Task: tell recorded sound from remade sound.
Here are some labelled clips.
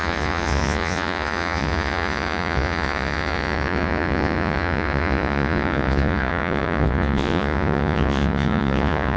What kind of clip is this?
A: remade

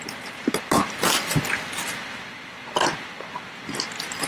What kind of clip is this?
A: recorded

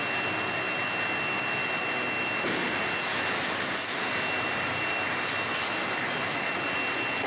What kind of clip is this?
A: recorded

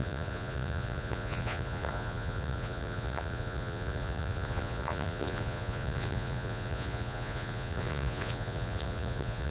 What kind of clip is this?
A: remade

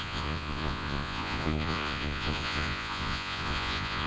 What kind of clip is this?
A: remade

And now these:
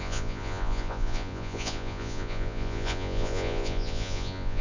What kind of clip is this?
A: remade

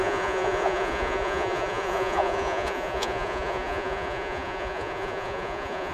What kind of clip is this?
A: remade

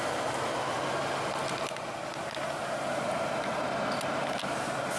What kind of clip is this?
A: recorded